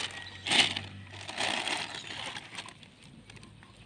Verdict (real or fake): real